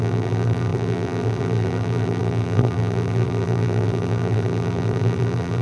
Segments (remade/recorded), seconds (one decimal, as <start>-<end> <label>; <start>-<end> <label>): 0.0-5.6 remade